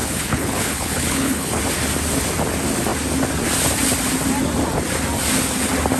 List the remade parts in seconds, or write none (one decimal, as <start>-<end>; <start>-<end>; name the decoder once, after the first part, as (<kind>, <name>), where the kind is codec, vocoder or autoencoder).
0.0-1.6 (codec, HILCodec)